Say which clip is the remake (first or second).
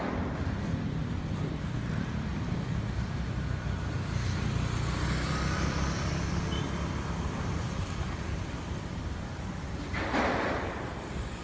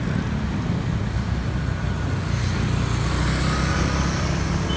first